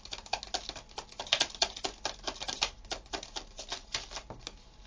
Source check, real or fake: real